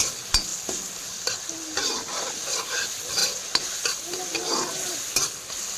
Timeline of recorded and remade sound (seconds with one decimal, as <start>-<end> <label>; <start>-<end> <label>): 0.0-5.8 recorded